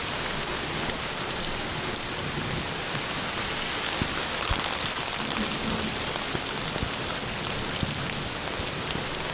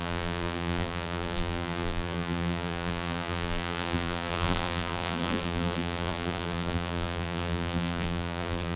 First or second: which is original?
first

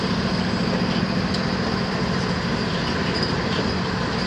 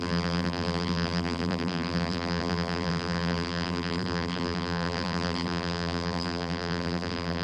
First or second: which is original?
first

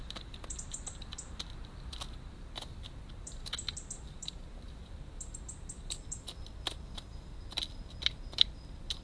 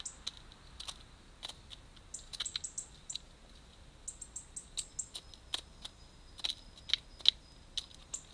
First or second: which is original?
second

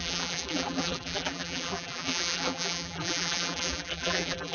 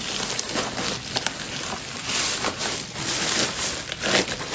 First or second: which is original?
second